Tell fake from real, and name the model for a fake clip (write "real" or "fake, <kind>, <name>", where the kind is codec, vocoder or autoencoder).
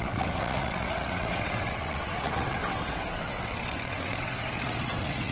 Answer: fake, vocoder, WaveNeXt